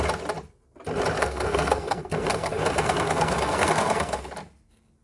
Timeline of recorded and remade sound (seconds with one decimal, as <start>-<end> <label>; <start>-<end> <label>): 0.0-1.2 recorded; 1.2-4.2 remade; 4.2-5.0 recorded